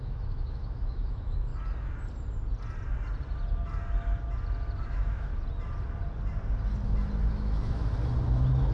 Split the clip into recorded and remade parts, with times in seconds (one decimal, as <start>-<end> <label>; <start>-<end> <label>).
0.0-1.5 remade; 1.5-4.8 recorded; 4.8-5.3 remade; 5.3-7.3 recorded; 7.3-7.8 remade; 7.8-8.7 recorded